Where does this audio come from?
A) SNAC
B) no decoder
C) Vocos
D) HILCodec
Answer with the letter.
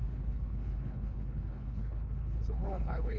D